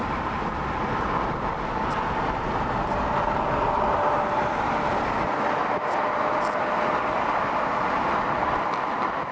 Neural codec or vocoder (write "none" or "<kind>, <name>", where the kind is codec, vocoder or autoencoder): none